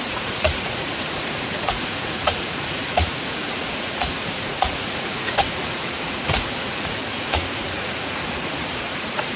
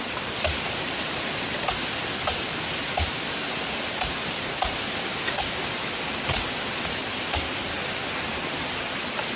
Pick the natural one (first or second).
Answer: second